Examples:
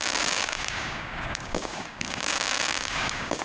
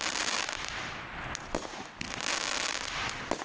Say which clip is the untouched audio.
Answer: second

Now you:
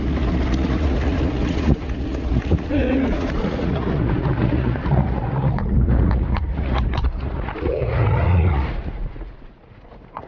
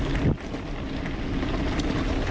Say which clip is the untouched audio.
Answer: second